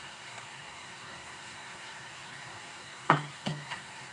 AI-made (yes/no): yes